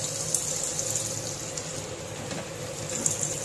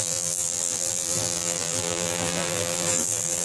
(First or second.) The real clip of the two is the first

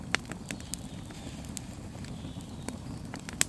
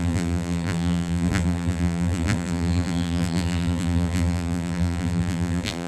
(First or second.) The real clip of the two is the first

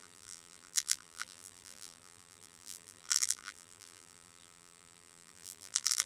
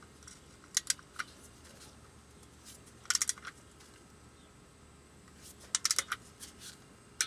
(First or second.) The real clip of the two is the second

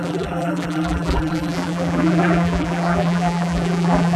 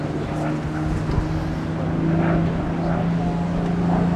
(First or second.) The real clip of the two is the second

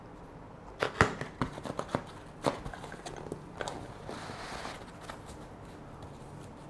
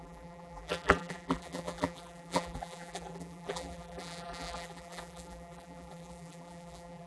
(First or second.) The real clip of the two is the first